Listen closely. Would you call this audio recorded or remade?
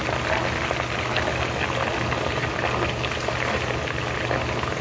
recorded